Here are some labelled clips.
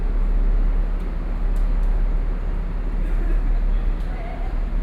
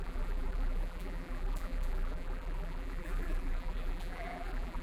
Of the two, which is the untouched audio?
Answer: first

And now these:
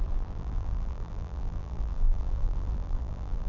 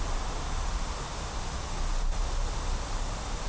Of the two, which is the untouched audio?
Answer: second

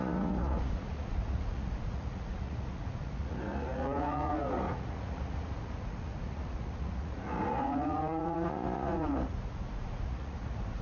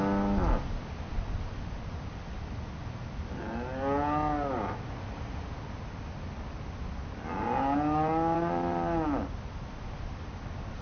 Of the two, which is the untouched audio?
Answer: second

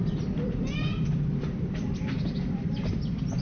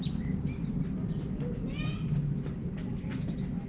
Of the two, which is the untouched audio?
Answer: second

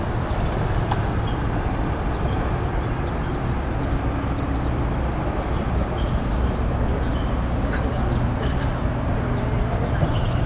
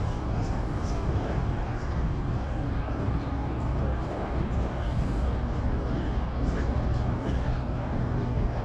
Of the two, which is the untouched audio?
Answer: first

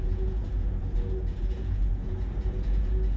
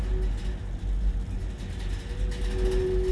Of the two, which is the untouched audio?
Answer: second